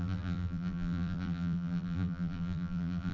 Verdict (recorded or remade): remade